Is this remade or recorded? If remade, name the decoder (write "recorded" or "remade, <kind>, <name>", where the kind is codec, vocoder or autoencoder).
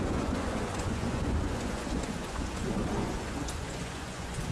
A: remade, vocoder, Vocos